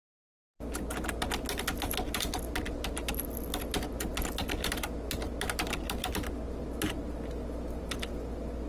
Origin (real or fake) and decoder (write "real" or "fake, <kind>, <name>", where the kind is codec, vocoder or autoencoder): real